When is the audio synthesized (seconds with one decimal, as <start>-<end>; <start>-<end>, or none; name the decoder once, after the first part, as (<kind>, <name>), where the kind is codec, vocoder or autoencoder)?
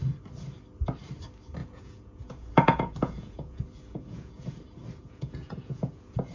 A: 1.6-4.6 (vocoder, Vocos); 5.0-6.3